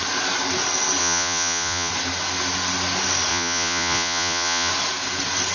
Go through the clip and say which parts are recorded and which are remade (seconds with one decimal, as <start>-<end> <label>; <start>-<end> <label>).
0.0-1.0 recorded; 1.0-1.9 remade; 1.9-3.3 recorded; 3.3-4.7 remade; 4.7-5.5 recorded